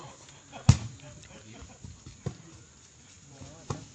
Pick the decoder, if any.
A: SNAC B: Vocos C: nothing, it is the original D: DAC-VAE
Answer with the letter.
C